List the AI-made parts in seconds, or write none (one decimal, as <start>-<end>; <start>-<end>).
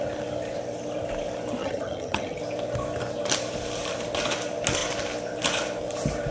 1.6-2.4